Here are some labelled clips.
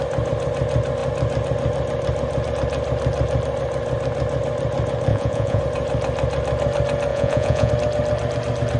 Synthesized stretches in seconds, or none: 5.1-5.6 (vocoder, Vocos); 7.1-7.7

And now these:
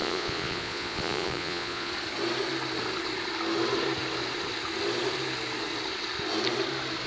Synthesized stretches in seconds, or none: 0.0-1.9 (vocoder, Vocos)

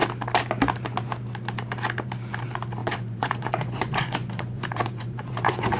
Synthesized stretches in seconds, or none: 2.8-5.8 (vocoder, Vocos)

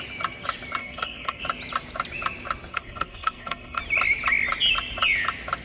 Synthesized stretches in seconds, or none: 0.8-1.4 (codec, SNAC); 2.7-3.8

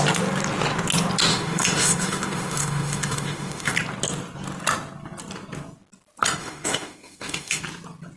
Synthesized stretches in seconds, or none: 1.3-3.7 (autoencoder, DAC-VAE); 6.4-7.6

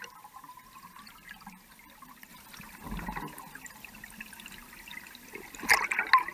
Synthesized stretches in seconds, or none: none

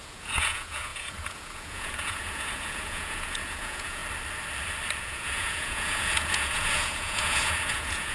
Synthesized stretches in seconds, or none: 0.0-4.0 (vocoder, Vocos); 5.0-8.1